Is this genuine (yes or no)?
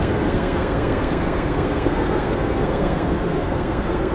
no